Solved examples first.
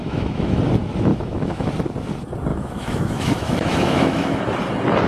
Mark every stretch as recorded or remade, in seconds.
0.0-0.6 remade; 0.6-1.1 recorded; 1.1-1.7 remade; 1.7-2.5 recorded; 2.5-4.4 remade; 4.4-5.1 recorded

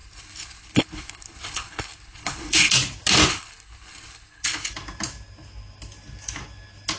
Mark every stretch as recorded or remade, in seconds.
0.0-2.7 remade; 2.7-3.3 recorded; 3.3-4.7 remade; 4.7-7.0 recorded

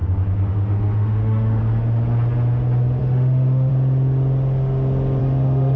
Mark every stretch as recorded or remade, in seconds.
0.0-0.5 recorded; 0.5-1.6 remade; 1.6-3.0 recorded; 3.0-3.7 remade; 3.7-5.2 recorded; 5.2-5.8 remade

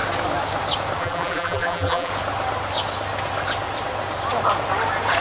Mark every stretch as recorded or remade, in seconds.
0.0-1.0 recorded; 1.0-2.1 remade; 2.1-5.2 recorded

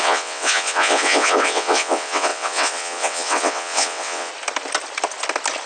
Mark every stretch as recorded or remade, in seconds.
0.0-4.3 remade; 4.3-5.7 recorded

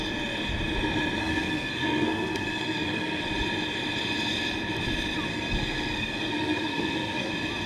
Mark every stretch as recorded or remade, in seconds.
0.0-1.2 recorded; 1.2-3.2 remade; 3.2-5.3 recorded; 5.3-7.3 remade; 7.3-7.7 recorded

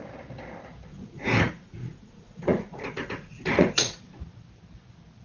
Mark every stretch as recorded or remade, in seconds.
0.0-0.9 recorded; 0.9-4.0 remade; 4.0-5.2 recorded